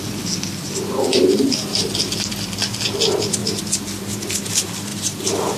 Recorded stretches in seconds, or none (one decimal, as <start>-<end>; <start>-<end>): 0.0-1.1; 2.3-3.4; 4.1-4.9